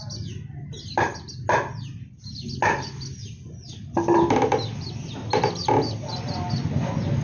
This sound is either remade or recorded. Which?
recorded